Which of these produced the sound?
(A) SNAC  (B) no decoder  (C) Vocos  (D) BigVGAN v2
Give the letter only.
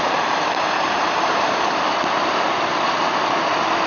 D